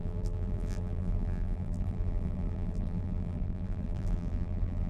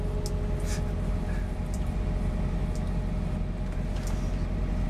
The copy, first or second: first